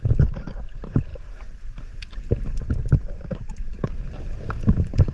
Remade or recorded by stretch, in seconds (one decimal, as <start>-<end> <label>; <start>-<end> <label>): 0.0-5.1 recorded